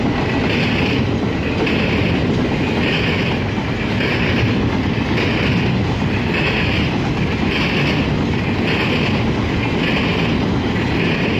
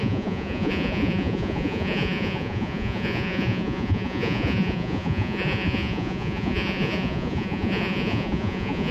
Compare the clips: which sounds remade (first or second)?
second